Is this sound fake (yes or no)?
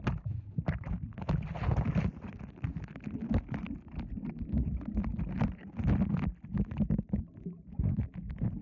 no